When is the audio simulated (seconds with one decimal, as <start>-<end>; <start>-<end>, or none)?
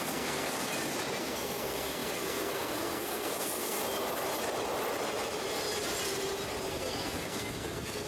0.0-0.7; 1.2-3.8; 6.7-8.1